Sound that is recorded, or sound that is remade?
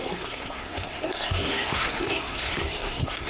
remade